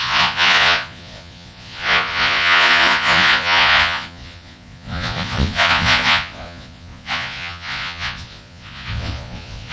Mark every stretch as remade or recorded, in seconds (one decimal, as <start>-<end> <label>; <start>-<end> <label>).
0.0-9.7 remade